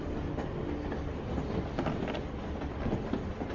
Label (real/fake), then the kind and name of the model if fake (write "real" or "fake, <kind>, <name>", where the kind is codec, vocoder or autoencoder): real